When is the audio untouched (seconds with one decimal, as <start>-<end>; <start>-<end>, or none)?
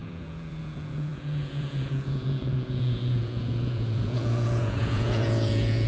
none